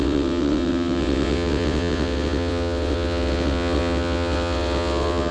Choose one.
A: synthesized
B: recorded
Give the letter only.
A